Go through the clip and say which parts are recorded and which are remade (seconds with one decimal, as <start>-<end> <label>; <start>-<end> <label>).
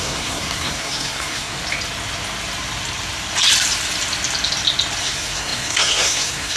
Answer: 0.0-1.6 remade; 1.6-5.0 recorded; 5.0-6.6 remade